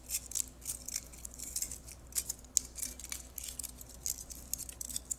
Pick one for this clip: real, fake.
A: real